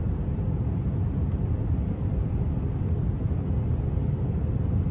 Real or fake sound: real